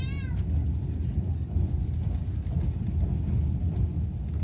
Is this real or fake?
real